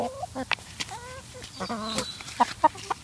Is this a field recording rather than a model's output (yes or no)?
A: yes